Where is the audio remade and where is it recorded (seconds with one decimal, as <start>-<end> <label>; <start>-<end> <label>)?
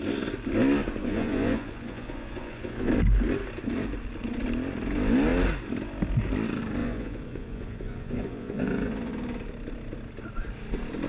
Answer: 0.0-1.0 recorded; 1.0-2.9 remade; 2.9-6.8 recorded; 6.8-9.1 remade; 9.1-11.1 recorded